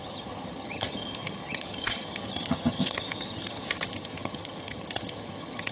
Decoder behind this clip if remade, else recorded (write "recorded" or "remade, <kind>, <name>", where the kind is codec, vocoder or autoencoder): remade, vocoder, HiFi-GAN